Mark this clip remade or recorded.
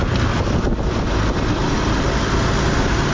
recorded